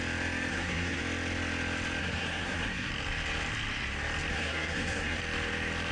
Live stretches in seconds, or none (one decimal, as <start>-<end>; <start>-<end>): 0.0-0.5; 1.0-2.0; 2.9-4.3; 5.2-5.9